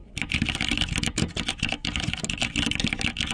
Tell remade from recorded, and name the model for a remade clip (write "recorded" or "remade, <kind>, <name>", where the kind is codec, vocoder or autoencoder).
recorded